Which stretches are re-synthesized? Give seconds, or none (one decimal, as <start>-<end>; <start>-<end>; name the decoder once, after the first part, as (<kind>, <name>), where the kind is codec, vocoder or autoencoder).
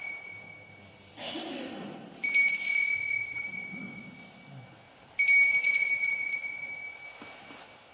3.2-4.1 (vocoder, Vocos); 5.5-6.8